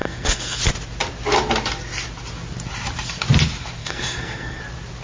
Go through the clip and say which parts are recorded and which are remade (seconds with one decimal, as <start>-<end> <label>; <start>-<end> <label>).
0.0-0.6 remade; 0.6-3.8 recorded; 3.8-4.6 remade; 4.6-5.0 recorded